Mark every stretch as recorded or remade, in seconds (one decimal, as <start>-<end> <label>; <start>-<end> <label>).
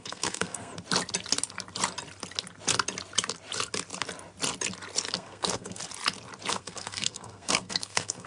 0.0-0.7 remade; 0.7-5.1 recorded; 5.1-5.8 remade; 5.8-6.5 recorded; 6.5-8.3 remade